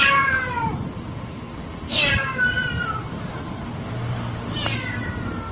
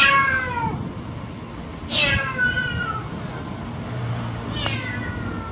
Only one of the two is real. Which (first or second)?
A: second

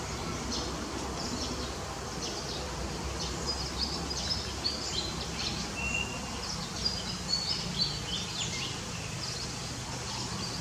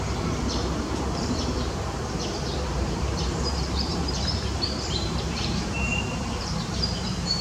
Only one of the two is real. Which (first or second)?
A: first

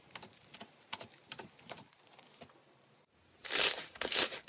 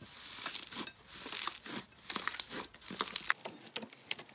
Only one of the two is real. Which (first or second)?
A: second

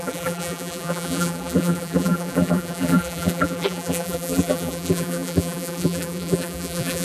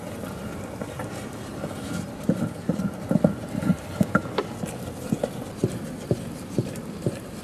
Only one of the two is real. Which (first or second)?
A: second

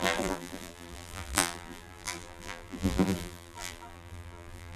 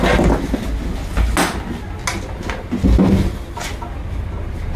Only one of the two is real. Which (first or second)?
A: second